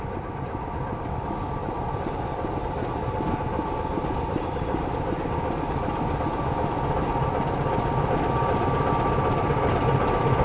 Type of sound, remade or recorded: recorded